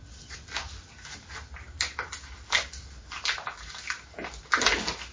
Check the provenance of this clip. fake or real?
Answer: real